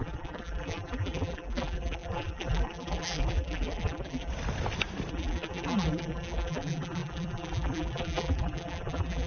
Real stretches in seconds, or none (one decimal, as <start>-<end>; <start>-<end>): 4.3-5.1

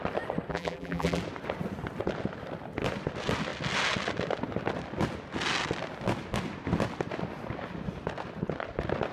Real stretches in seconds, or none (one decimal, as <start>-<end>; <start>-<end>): 0.0-0.5; 1.2-9.1